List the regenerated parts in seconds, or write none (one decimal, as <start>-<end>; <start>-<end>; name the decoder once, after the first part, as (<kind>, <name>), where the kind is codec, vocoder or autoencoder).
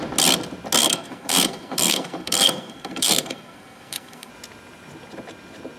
0.8-4.3 (codec, SNAC)